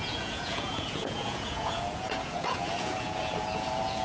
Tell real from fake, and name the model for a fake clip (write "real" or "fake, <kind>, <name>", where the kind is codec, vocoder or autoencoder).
fake, vocoder, Vocos